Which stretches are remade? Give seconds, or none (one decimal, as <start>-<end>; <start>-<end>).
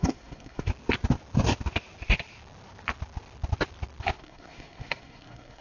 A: 0.0-0.7; 4.1-5.6